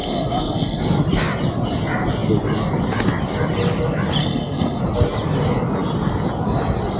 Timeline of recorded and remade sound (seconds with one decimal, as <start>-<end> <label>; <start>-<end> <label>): 0.0-0.8 remade; 0.8-4.2 recorded; 4.2-4.8 remade; 4.8-7.0 recorded